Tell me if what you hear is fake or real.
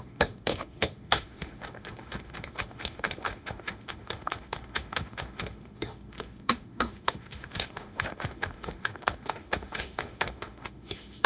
fake